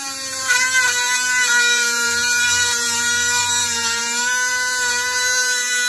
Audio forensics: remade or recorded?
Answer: remade